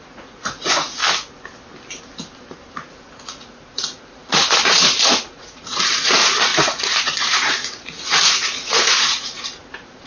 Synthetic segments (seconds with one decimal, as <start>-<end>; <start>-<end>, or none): 0.0-1.0; 2.7-10.1